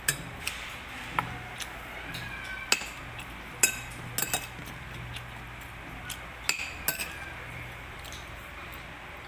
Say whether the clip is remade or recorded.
recorded